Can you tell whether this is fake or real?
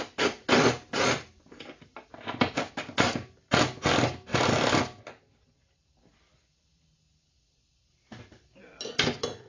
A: real